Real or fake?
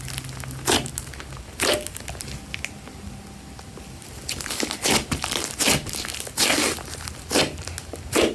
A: real